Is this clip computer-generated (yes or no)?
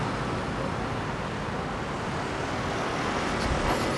no